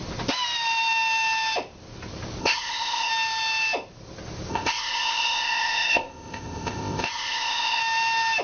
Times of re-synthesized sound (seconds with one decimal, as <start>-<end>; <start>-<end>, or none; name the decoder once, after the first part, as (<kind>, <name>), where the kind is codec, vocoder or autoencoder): 2.4-3.1 (codec, ZipCodec); 4.5-7.8